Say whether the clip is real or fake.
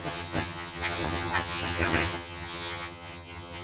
fake